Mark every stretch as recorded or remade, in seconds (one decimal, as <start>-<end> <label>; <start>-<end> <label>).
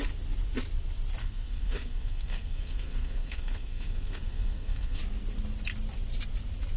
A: 0.0-1.2 recorded; 1.2-5.0 remade; 5.0-6.8 recorded